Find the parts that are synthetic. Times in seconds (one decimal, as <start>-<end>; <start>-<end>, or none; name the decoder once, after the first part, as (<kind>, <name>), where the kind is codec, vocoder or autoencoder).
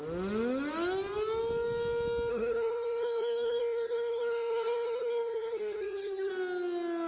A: 2.3-6.3 (codec, SNAC)